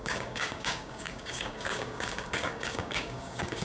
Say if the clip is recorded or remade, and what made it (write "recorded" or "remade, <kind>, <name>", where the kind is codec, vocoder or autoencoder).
remade, codec, DAC